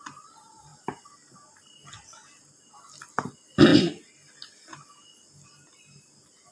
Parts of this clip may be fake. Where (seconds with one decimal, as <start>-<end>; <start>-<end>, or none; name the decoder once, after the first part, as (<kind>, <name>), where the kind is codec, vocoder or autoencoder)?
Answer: none